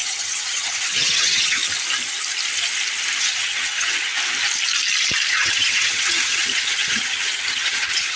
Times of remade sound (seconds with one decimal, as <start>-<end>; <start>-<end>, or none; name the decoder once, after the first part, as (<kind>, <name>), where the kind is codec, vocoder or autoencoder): 0.0-1.6 (vocoder, HiFi-GAN); 3.2-4.1; 5.3-8.2